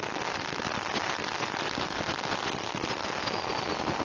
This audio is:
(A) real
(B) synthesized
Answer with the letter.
A